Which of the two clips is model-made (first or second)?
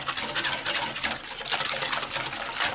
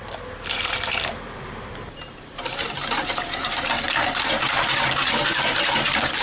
second